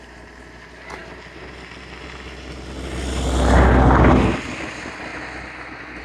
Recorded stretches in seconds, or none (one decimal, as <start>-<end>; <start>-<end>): 0.0-6.0